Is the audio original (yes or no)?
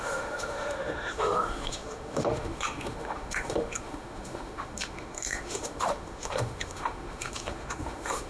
no